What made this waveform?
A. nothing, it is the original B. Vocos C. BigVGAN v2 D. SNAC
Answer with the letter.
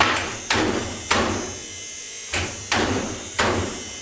C